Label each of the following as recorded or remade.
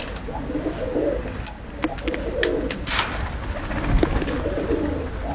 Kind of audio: recorded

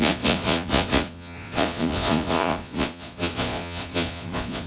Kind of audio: remade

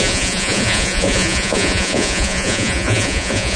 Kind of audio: remade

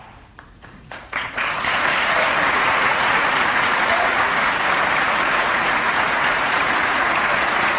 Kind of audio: remade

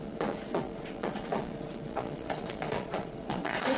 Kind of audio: remade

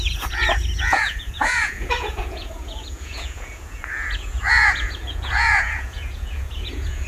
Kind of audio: remade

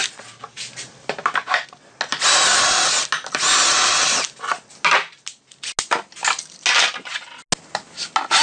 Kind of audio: recorded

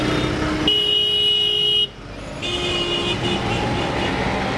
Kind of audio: recorded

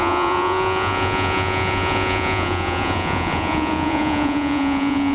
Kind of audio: remade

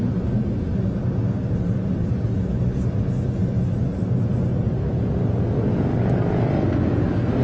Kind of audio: recorded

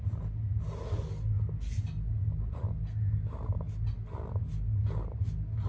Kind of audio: recorded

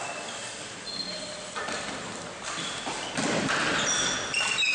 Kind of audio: recorded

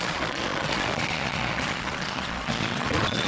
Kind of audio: remade